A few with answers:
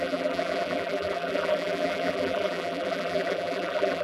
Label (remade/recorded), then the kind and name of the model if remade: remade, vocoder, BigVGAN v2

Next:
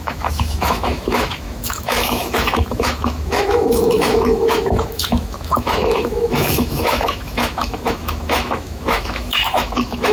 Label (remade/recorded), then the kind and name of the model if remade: remade, autoencoder, DAC-VAE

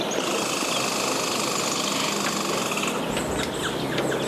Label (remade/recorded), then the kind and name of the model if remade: recorded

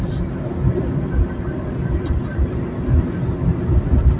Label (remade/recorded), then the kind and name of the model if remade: recorded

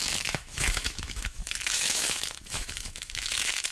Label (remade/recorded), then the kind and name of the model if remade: remade, autoencoder, DAC-VAE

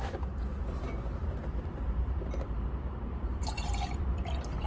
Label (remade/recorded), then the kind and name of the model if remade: remade, vocoder, BigVGAN v2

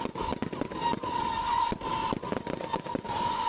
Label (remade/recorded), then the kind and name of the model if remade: recorded